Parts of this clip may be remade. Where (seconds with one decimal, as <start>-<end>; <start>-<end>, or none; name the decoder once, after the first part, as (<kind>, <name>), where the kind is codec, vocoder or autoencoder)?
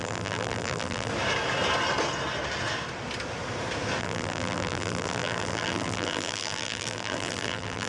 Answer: 0.0-1.1 (vocoder, BigVGAN v2); 4.0-7.9